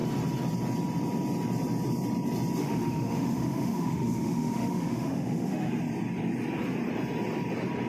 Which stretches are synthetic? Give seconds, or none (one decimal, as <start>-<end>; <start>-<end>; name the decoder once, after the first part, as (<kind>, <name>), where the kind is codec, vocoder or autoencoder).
2.6-5.7 (autoencoder, DAC-VAE)